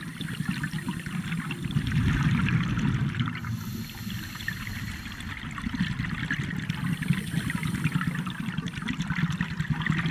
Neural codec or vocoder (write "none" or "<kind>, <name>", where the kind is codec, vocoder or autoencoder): none